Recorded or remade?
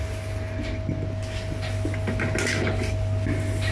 recorded